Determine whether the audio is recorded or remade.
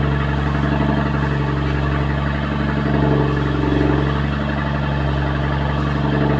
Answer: recorded